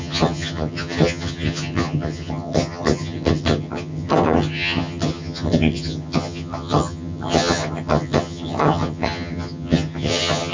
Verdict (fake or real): fake